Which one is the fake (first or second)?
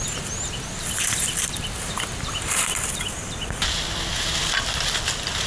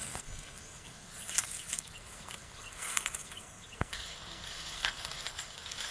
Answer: second